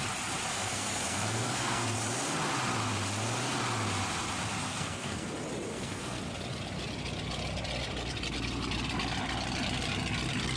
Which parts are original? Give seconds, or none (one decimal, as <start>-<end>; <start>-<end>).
0.0-0.5; 2.0-4.6; 5.3-5.7; 6.2-10.6